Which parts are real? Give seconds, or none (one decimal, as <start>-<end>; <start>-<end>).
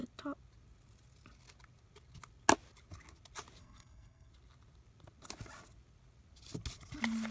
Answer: 0.0-3.6; 4.3-7.3